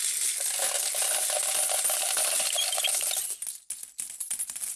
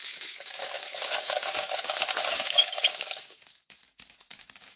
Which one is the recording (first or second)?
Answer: first